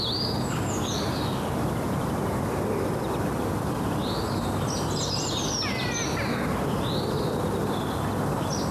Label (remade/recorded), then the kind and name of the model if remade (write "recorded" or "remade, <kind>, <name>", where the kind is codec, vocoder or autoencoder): recorded